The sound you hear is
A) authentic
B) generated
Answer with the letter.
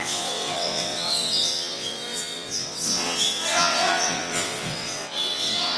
B